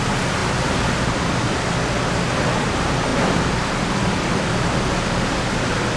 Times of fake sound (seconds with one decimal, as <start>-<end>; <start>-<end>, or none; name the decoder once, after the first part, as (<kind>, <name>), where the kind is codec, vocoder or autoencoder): none

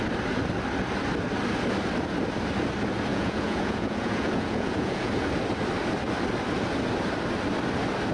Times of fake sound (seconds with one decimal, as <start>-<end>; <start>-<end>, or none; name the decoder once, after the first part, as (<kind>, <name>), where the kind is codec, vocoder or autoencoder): 3.1-5.1 (vocoder, Vocos)

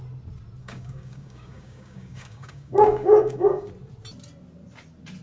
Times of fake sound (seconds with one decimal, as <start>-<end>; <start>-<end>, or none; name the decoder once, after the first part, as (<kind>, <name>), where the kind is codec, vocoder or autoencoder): 0.6-3.7 (codec, DAC)